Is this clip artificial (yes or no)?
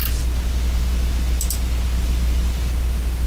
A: no